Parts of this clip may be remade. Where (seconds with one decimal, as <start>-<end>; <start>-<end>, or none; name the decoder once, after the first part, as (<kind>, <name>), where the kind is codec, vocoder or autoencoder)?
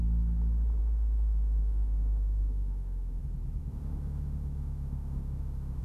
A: 0.8-3.2 (autoencoder, DAC-VAE); 3.6-5.8